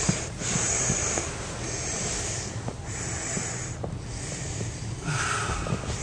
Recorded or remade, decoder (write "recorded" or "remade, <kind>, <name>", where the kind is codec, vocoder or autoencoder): recorded